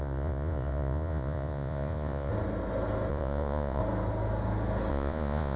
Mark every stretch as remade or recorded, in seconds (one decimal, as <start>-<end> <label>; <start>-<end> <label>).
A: 0.0-2.3 remade; 2.3-3.1 recorded; 3.1-3.8 remade; 3.8-4.9 recorded; 4.9-5.6 remade